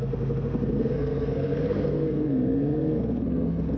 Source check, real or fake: fake